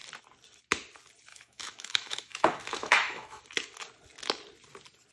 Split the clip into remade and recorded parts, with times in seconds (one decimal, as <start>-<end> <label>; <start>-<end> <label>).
0.0-1.3 recorded; 1.3-3.4 remade; 3.4-5.1 recorded